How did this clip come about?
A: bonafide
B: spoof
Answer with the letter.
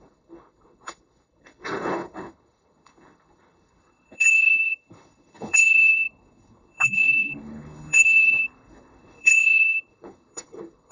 B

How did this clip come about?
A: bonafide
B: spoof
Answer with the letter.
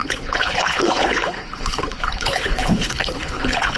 B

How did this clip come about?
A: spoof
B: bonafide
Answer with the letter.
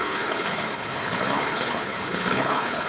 A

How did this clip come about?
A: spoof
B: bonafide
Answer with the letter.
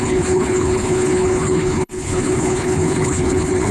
A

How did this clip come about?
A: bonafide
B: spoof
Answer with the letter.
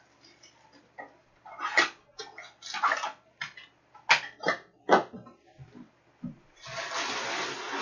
A